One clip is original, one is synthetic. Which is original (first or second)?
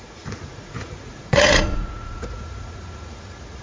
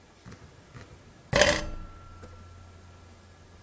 second